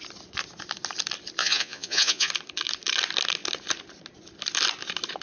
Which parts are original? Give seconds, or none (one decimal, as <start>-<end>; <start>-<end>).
0.0-1.4; 2.3-5.2